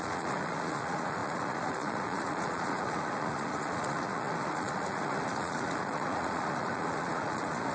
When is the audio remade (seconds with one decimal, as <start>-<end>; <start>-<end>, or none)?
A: 0.0-7.7